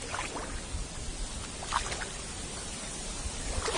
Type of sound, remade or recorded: recorded